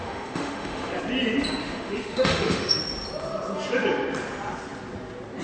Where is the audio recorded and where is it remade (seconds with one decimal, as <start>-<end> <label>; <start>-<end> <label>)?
0.0-1.0 remade; 1.0-1.6 recorded; 1.6-2.8 remade; 2.8-5.4 recorded